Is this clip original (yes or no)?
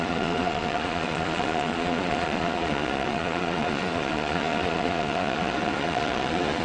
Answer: no